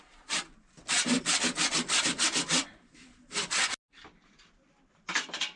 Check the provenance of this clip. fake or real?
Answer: real